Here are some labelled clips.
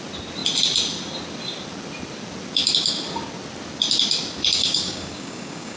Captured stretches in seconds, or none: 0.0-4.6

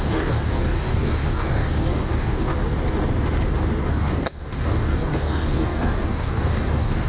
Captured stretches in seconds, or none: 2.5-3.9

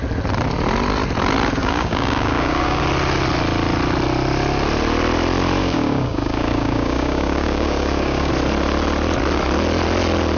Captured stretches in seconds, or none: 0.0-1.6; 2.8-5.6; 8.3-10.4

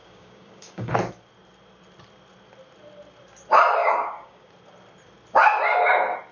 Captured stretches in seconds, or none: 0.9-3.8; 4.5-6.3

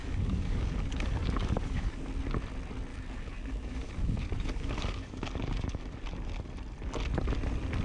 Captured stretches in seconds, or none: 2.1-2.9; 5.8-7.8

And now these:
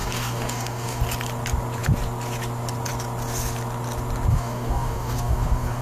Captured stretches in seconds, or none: 1.0-4.3

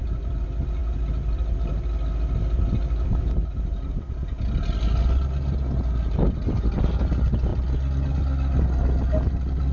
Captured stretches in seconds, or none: 0.0-9.7